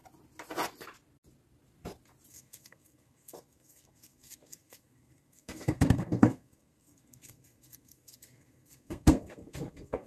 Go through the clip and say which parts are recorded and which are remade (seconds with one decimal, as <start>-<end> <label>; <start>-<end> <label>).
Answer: 0.0-2.3 recorded; 2.3-10.1 remade